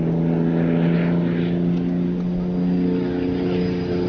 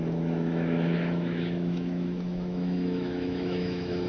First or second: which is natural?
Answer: first